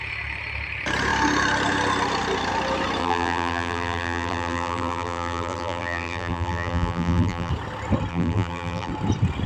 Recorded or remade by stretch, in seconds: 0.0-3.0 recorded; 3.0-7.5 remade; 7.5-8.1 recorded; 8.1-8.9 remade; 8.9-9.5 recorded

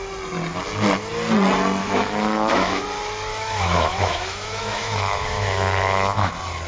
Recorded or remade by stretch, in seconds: 0.0-1.8 recorded; 1.8-2.8 remade; 2.8-3.3 recorded; 3.3-6.3 remade; 6.3-6.7 recorded

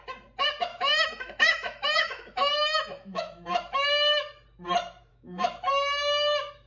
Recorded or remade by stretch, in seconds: 0.0-0.7 recorded; 0.7-3.9 remade; 3.9-5.1 recorded; 5.1-5.7 remade; 5.7-6.7 recorded

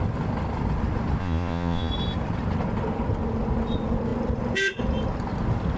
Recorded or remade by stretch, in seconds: 0.0-1.2 recorded; 1.2-1.9 remade; 1.9-5.8 recorded